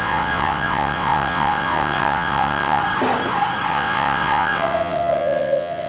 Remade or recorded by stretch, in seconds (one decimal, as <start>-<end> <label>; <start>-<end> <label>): 0.0-2.8 remade; 2.8-3.7 recorded; 3.7-5.9 remade